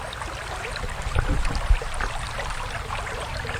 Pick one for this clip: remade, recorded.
remade